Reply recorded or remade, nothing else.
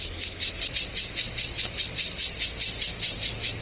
recorded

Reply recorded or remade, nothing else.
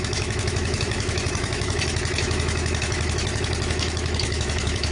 remade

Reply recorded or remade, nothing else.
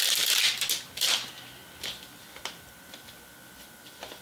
recorded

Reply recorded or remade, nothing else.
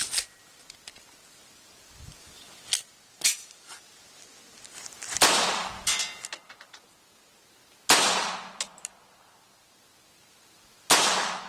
recorded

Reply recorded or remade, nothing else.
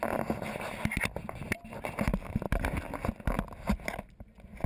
recorded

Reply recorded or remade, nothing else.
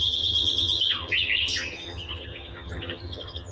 remade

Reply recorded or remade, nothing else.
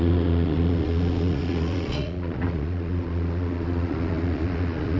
remade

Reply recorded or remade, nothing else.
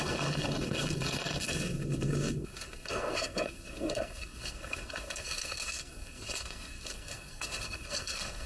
remade